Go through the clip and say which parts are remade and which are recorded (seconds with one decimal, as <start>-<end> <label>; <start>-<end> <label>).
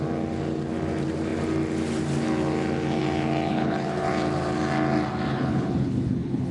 0.0-3.5 recorded; 3.5-4.1 remade; 4.1-5.3 recorded; 5.3-6.5 remade